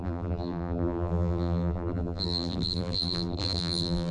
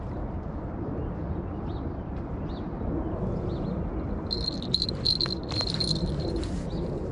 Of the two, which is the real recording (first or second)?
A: second